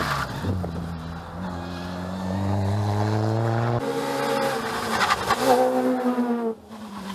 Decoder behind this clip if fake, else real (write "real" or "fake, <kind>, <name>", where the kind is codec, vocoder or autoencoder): real